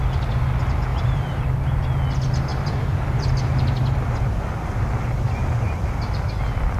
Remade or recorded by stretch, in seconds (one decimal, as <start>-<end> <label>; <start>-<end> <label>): 0.0-0.9 recorded; 0.9-1.4 remade; 1.4-2.5 recorded; 2.5-5.8 remade; 5.8-6.8 recorded